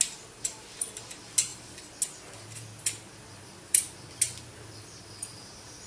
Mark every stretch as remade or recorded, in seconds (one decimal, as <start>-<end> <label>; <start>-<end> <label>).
0.0-5.9 recorded